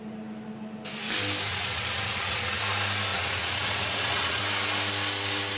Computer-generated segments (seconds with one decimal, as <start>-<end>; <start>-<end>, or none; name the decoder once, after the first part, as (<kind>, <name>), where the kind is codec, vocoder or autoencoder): 1.5-2.6 (vocoder, Vocos); 3.1-4.4